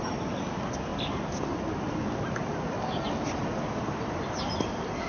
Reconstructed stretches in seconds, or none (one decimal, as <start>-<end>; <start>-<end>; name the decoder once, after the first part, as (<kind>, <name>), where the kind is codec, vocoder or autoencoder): none